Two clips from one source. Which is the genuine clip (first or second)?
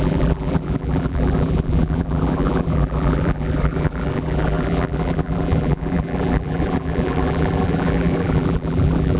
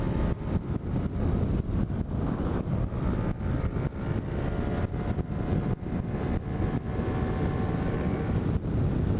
second